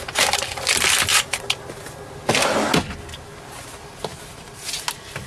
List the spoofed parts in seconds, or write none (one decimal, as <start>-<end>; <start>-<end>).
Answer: none